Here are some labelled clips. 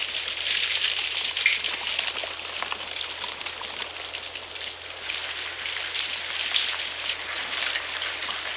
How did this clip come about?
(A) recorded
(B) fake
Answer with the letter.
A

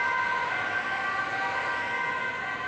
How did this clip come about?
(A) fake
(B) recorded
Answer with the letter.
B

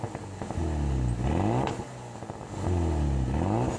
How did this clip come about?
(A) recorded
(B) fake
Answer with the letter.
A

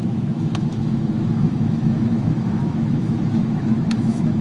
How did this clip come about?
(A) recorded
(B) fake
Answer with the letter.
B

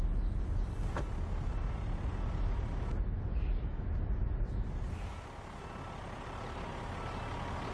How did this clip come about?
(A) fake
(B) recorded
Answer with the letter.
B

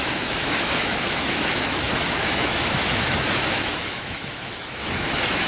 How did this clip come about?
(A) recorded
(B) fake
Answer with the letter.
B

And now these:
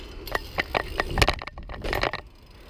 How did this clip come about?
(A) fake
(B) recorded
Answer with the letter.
B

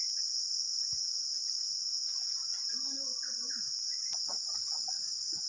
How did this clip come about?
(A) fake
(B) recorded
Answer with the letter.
B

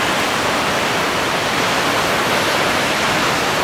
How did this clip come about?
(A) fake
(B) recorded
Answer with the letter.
B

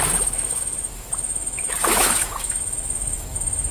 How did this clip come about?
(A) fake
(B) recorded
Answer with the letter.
A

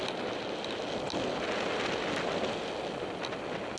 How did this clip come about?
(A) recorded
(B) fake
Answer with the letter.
A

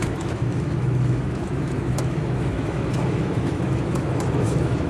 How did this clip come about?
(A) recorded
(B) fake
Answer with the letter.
B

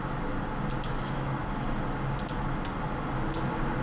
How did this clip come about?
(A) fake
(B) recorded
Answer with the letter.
B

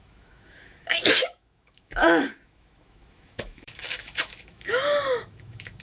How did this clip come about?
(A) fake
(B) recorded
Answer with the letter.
A